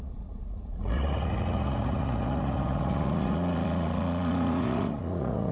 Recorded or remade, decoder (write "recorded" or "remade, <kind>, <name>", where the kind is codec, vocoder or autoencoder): remade, vocoder, Vocos